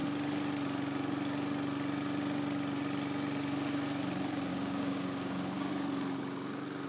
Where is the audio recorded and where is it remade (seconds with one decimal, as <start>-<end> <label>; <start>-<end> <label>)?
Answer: 0.0-4.5 recorded; 4.5-5.7 remade; 5.7-6.9 recorded